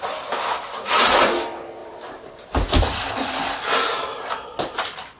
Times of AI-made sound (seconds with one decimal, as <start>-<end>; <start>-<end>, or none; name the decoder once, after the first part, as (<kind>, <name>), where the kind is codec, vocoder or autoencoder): 1.8-5.2 (vocoder, BigVGAN v2)